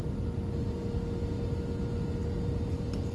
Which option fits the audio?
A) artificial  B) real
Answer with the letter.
B